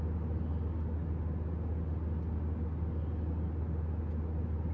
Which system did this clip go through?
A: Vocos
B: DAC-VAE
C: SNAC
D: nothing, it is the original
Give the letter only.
D